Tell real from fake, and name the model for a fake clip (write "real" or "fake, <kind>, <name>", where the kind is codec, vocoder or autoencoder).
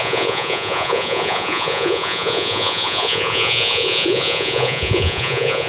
fake, vocoder, Vocos